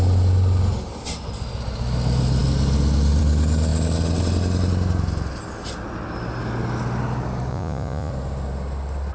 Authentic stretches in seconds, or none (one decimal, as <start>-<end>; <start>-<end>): 0.0-7.5; 8.1-9.1